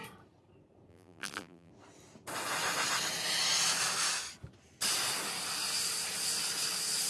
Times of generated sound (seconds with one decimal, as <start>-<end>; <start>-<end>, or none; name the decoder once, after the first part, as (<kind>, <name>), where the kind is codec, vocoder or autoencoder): 0.9-1.7 (vocoder, BigVGAN v2)